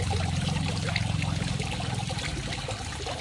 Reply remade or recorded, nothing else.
recorded